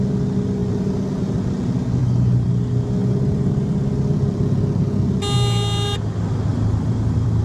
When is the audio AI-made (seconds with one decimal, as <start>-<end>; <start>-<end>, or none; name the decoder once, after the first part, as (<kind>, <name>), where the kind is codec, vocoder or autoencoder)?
2.0-2.5 (vocoder, BigVGAN v2); 3.0-3.5; 6.5-7.4